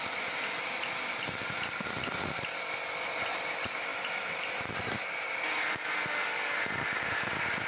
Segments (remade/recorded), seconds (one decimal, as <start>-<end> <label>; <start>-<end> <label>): 0.0-7.7 recorded

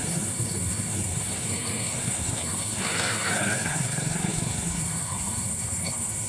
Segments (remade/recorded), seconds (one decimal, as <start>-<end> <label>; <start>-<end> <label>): 0.0-6.3 remade

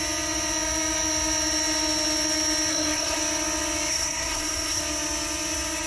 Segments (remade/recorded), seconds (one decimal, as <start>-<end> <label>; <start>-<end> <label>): 0.0-2.7 recorded; 2.7-3.2 remade; 3.2-3.9 recorded; 3.9-4.8 remade; 4.8-5.9 recorded

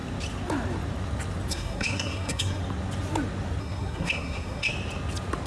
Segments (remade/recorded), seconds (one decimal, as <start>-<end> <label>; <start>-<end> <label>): 0.0-1.5 recorded; 1.5-2.6 remade; 2.6-3.6 recorded; 3.6-4.7 remade; 4.7-5.5 recorded

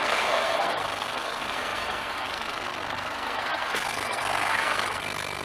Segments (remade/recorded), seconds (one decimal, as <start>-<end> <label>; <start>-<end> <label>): 0.0-5.4 remade

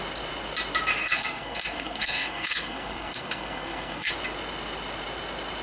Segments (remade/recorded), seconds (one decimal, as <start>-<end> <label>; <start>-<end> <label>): 0.0-1.0 recorded; 1.0-4.1 remade; 4.1-5.6 recorded

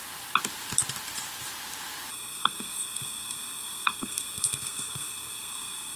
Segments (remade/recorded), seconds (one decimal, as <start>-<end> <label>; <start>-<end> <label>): 0.0-2.1 recorded; 2.1-6.0 remade

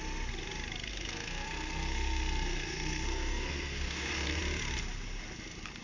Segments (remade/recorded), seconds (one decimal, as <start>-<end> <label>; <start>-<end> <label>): 0.0-0.9 recorded; 0.9-4.4 remade; 4.4-5.8 recorded